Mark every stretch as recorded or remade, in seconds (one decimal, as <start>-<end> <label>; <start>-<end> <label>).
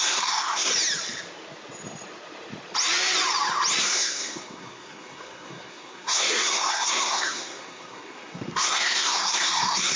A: 0.0-0.7 remade; 0.7-3.8 recorded; 3.8-10.0 remade